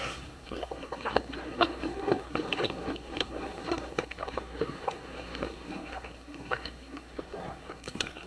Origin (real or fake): fake